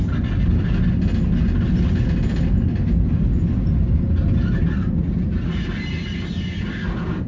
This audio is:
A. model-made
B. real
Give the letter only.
B